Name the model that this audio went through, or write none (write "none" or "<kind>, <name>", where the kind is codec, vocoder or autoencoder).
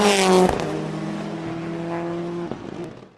none